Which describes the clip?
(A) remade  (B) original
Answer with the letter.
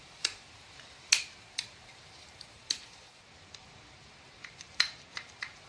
A